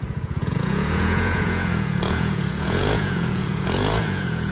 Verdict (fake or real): fake